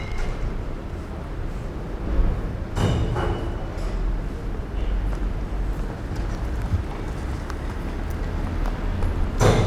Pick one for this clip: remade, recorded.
recorded